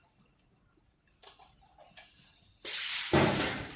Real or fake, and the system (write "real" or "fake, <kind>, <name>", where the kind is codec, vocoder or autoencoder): real